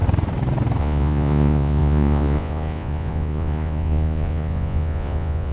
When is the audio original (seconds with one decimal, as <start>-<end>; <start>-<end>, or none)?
0.0-0.8